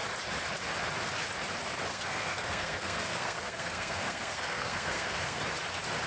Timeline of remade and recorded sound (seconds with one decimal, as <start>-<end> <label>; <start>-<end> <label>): 0.0-1.9 recorded; 1.9-5.4 remade; 5.4-6.1 recorded